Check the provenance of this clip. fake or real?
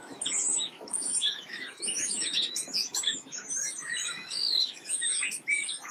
fake